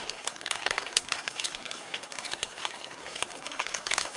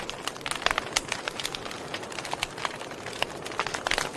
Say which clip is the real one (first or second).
second